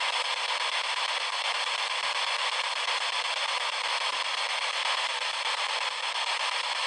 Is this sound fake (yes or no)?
no